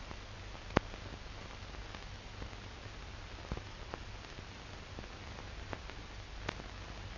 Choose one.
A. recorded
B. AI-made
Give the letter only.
A